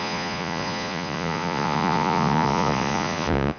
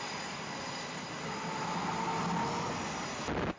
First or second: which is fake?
first